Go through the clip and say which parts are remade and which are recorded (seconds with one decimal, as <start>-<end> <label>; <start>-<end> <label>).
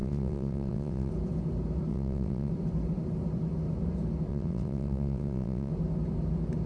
0.0-1.1 remade; 1.1-1.9 recorded; 1.9-2.5 remade; 2.5-4.3 recorded; 4.3-5.7 remade; 5.7-6.7 recorded